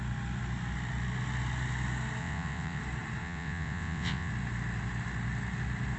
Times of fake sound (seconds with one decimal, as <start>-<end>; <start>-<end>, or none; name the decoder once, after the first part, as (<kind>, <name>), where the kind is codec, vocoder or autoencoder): 2.2-2.8 (vocoder, WaveNeXt); 3.2-4.3